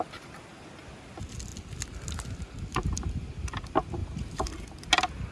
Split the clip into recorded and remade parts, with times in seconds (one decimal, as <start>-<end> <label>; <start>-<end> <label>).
0.0-2.7 recorded; 2.7-3.6 remade; 3.6-4.0 recorded; 4.0-4.5 remade; 4.5-5.3 recorded